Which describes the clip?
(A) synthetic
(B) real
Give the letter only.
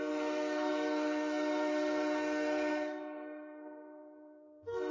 A